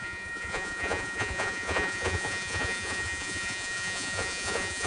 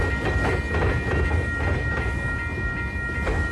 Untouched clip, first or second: second